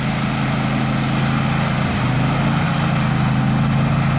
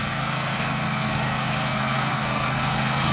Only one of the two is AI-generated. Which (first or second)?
second